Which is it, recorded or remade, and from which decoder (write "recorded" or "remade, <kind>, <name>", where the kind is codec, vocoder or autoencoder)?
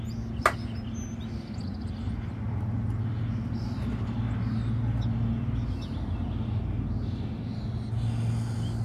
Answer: recorded